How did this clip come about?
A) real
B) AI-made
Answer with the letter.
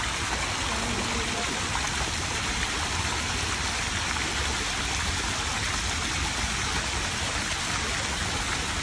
A